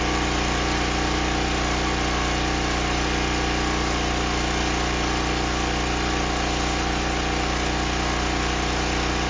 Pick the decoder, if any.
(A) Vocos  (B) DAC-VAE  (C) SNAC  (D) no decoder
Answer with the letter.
D